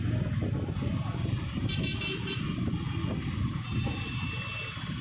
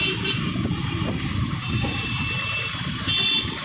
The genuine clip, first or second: first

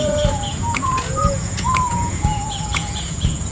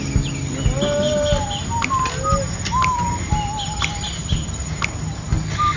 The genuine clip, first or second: second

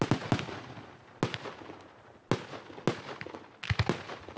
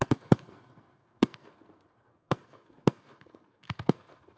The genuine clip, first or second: first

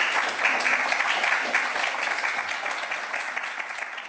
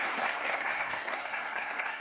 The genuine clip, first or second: first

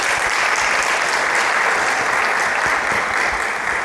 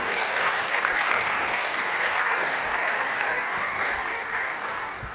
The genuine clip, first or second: first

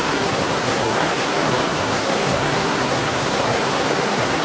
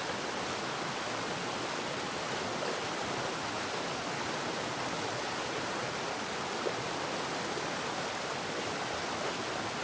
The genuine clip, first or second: second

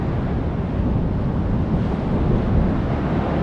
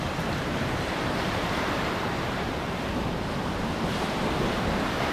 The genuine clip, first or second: first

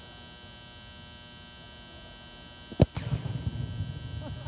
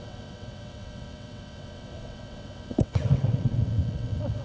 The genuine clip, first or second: first